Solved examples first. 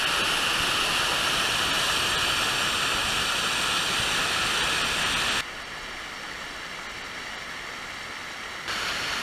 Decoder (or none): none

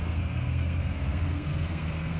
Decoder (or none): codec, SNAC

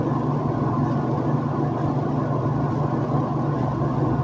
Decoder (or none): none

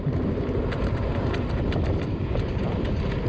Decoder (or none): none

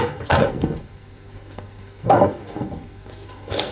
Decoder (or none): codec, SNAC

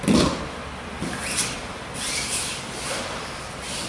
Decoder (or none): none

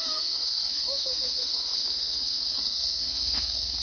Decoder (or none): codec, SNAC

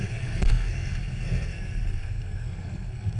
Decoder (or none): codec, SNAC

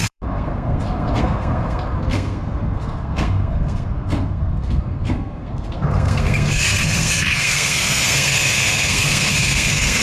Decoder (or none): codec, SNAC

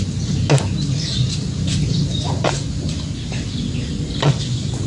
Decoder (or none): none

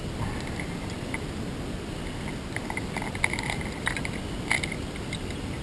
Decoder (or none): none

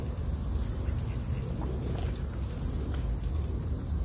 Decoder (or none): none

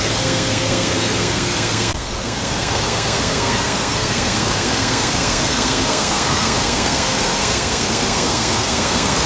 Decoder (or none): codec, SNAC